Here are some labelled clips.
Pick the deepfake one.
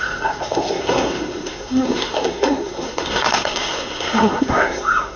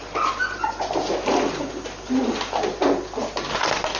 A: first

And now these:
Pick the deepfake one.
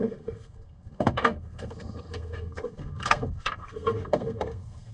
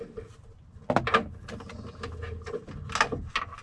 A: first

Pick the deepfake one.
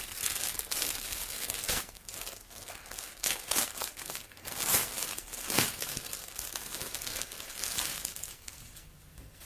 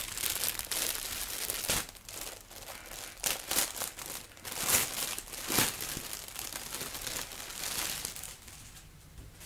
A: first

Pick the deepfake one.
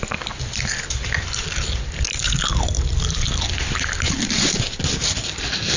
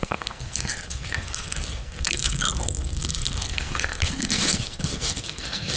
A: second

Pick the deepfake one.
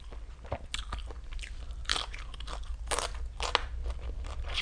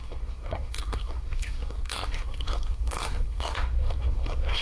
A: second